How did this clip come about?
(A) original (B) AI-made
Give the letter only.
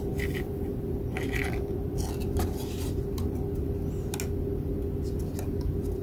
A